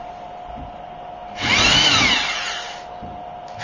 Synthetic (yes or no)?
no